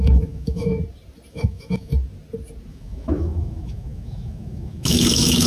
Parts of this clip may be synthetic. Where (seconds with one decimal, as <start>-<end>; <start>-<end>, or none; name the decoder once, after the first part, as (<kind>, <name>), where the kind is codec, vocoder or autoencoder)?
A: 0.0-0.7 (autoencoder, DAC-VAE); 1.3-1.9; 2.7-5.5